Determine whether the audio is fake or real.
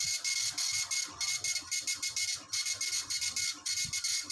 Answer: real